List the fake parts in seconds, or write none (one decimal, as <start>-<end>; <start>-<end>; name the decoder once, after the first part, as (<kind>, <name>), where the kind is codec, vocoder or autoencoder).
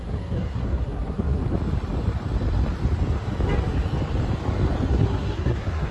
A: 0.0-1.4 (codec, SNAC); 4.9-5.9